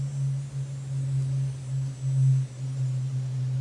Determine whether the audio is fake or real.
real